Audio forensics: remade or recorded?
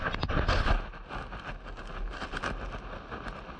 recorded